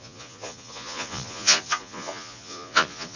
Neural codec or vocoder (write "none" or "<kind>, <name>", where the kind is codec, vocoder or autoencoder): vocoder, Vocos